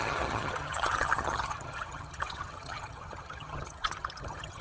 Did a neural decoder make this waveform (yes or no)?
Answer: yes